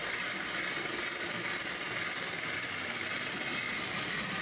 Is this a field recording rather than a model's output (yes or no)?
yes